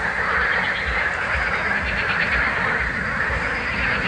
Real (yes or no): yes